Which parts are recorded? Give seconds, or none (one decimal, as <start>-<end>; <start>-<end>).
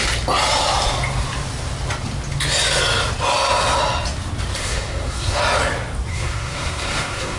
0.0-4.6; 5.4-6.1